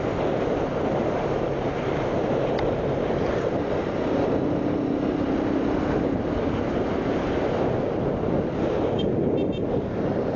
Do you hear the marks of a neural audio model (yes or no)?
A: no